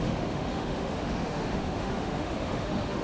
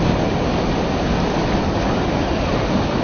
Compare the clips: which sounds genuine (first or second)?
second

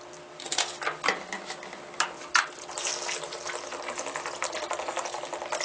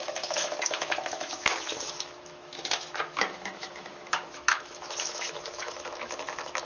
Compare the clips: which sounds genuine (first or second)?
first